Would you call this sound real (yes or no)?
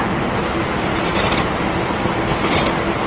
yes